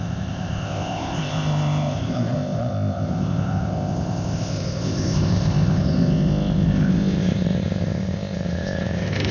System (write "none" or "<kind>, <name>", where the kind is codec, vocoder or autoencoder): codec, ZipCodec